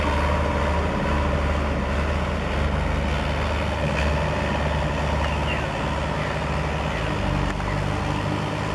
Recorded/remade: recorded